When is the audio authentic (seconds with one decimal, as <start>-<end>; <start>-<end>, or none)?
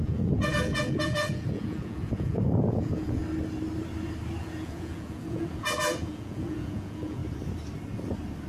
3.2-4.4; 7.2-8.5